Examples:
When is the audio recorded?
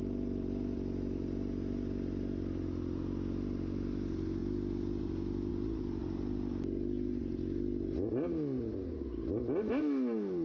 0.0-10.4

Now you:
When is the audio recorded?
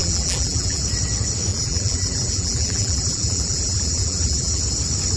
0.8-1.5; 4.6-5.2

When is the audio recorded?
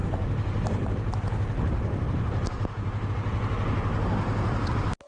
0.0-5.1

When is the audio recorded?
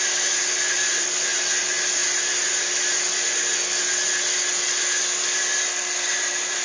0.0-6.6